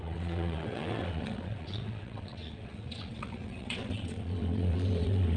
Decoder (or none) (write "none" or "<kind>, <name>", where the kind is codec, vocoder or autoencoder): vocoder, WaveNeXt